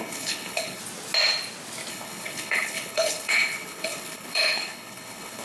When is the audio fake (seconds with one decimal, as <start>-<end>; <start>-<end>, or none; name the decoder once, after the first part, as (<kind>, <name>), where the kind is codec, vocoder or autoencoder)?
0.0-0.8 (codec, HILCodec); 1.9-5.4